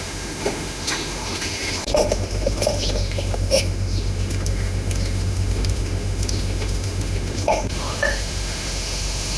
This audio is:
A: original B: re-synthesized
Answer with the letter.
B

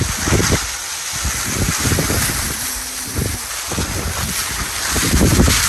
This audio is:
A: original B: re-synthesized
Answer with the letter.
A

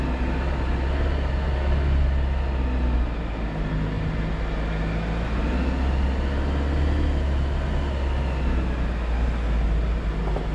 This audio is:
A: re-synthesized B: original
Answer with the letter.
B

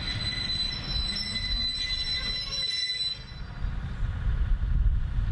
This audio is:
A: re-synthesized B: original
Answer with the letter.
B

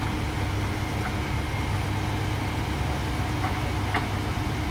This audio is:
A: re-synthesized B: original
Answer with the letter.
B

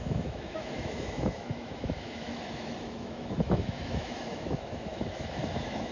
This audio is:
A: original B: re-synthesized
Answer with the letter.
B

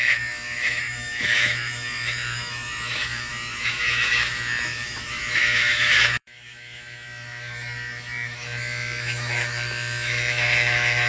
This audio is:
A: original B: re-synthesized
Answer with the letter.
B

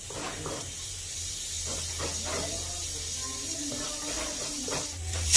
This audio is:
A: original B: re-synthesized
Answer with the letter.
A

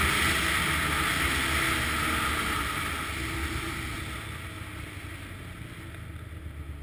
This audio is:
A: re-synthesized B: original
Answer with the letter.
B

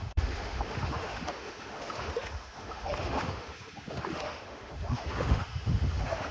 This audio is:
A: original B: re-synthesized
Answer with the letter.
B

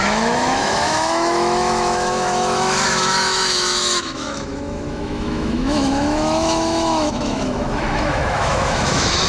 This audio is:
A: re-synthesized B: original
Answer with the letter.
A